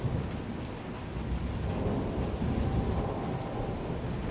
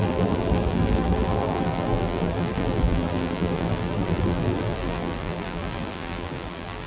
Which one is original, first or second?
first